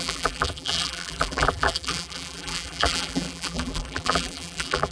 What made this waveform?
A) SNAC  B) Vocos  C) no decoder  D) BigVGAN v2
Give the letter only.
D